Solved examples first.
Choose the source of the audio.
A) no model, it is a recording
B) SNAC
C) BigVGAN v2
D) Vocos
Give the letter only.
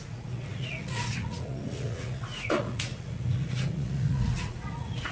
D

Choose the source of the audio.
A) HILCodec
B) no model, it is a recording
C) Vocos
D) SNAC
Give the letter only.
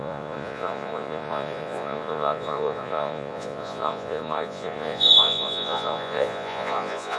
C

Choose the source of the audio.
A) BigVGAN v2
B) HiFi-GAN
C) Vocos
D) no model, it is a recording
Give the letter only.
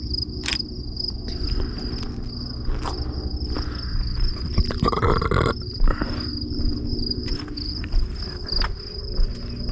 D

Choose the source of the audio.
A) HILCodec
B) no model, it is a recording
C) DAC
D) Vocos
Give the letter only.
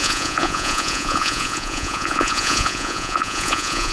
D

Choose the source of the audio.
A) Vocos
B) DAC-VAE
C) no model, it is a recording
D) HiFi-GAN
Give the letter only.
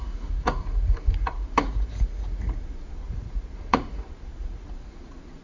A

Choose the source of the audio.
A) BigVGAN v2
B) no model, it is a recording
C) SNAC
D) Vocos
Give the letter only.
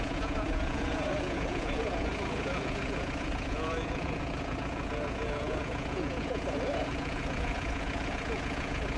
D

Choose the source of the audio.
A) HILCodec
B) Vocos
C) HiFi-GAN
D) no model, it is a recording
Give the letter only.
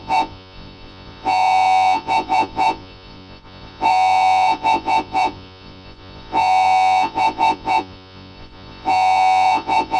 B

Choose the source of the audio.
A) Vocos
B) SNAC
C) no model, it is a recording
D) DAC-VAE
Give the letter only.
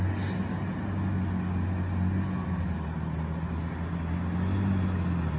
C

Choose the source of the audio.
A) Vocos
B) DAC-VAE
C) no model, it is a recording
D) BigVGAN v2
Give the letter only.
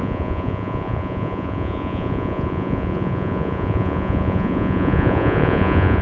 A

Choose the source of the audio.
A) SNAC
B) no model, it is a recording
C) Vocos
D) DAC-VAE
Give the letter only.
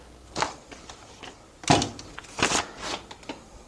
B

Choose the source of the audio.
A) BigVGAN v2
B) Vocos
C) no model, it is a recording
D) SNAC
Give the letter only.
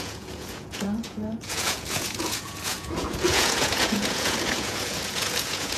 B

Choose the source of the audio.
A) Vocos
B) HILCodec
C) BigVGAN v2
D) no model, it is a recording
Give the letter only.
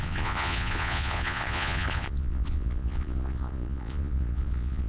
A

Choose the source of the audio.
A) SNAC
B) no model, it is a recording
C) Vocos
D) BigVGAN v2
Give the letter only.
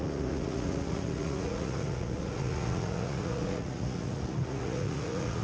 C